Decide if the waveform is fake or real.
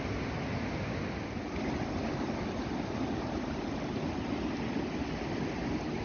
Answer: real